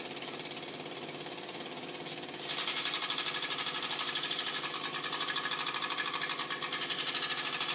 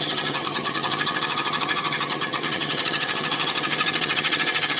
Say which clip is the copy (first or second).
second